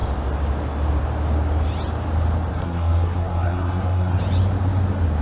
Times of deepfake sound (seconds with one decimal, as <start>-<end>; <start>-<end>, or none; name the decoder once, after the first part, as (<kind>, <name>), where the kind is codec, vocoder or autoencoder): 2.5-4.2 (codec, SNAC)